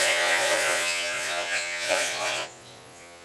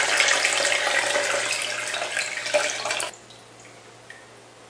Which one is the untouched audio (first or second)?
second